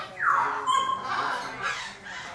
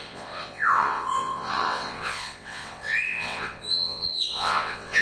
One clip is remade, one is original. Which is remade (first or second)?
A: second